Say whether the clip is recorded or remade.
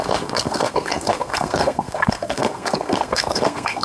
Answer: remade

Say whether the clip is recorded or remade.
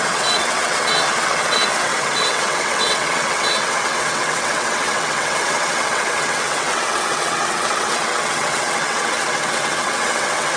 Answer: remade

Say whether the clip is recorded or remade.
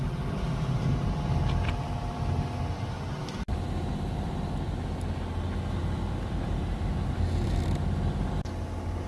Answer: recorded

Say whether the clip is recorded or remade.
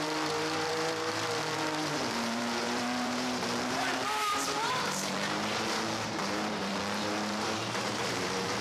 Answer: remade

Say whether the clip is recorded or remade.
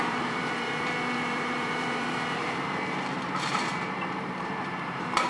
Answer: remade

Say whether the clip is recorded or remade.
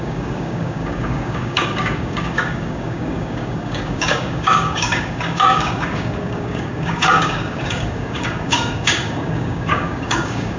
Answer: remade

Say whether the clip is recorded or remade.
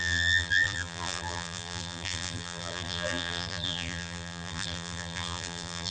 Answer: remade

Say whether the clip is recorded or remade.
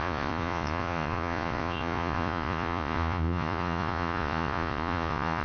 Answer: remade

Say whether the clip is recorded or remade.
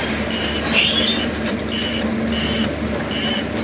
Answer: recorded